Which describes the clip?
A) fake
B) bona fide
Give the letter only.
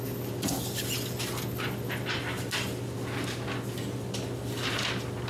B